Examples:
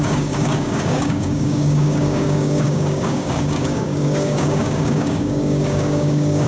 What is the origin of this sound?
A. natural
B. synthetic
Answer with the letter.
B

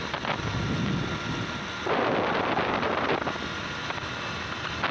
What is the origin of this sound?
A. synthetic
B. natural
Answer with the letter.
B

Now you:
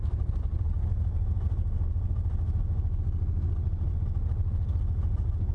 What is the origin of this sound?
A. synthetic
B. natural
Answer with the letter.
B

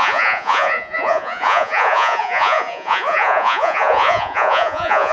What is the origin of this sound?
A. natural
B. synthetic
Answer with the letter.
B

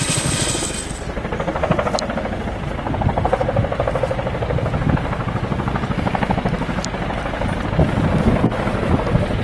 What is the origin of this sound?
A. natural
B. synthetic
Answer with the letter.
A